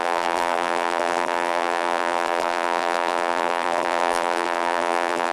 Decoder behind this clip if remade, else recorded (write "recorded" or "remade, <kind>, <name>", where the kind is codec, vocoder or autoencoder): remade, vocoder, BigVGAN v2